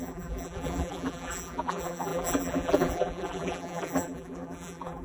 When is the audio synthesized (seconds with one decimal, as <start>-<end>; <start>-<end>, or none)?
0.0-5.0